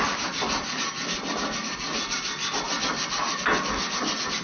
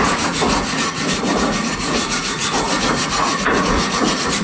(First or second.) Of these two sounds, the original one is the first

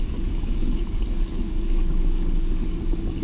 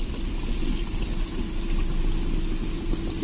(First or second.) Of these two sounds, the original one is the second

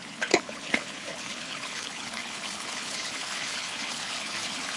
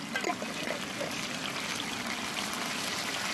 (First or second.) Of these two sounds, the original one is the second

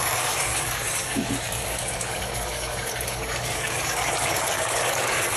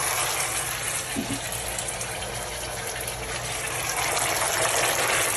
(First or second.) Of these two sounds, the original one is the second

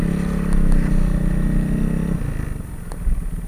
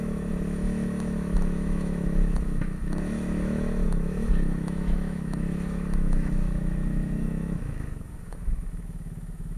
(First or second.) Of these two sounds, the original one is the first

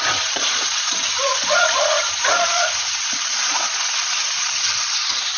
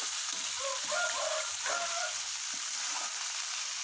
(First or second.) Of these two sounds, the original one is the second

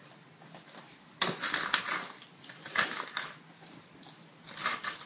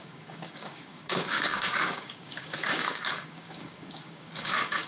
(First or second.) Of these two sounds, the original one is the first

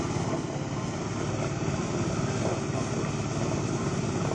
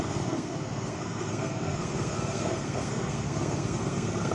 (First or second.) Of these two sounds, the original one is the first